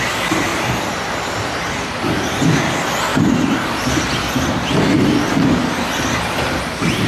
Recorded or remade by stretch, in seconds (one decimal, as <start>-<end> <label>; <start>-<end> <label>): 0.0-0.5 recorded; 0.5-2.0 remade; 2.0-3.1 recorded; 3.1-3.9 remade; 3.9-7.1 recorded